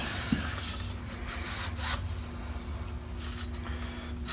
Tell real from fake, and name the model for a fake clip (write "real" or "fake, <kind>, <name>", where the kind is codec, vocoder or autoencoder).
real